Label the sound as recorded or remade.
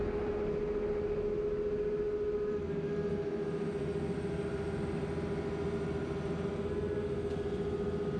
recorded